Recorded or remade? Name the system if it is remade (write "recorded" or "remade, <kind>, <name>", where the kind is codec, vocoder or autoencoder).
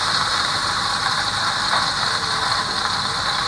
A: remade, vocoder, BigVGAN v2